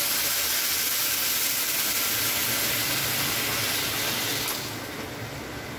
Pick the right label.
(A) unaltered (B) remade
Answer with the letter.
A